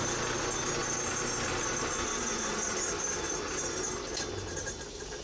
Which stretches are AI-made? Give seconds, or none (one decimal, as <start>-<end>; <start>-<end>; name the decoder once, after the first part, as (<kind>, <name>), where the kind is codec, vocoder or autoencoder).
none